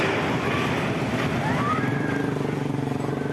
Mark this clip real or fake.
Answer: real